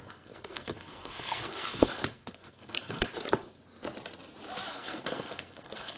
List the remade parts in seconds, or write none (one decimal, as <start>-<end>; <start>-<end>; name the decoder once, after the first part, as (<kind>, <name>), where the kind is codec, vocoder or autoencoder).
0.0-3.0 (codec, SNAC); 4.7-6.0

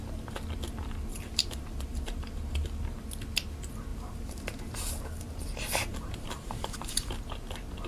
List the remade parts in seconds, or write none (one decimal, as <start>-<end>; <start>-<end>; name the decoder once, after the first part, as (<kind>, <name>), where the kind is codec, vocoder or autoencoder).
1.1-2.8 (vocoder, BigVGAN v2); 3.9-7.1

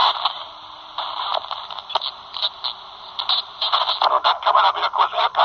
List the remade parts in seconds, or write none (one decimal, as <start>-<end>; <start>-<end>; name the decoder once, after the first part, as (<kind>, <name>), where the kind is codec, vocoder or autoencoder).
none

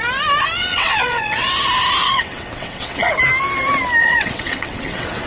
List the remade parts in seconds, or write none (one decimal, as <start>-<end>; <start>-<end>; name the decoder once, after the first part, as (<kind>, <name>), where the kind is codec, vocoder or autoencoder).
0.6-1.5 (vocoder, WaveNeXt); 2.0-3.1; 4.0-5.3